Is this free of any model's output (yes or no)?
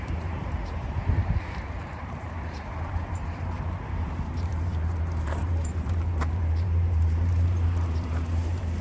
no